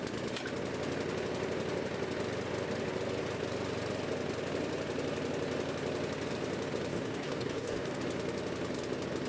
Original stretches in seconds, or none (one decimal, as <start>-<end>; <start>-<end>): 0.0-6.9; 8.0-9.3